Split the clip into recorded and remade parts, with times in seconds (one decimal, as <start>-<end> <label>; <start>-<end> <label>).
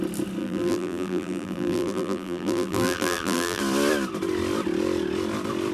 0.0-0.4 recorded; 0.4-3.6 remade; 3.6-5.7 recorded